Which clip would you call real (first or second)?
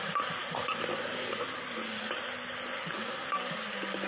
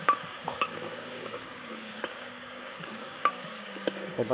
first